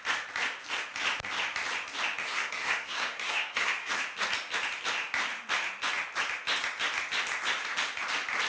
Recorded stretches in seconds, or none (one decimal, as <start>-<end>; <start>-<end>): 0.0-2.2; 3.9-8.5